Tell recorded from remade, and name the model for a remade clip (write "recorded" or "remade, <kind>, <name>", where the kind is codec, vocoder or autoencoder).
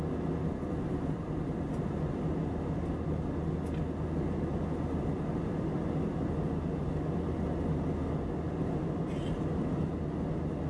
recorded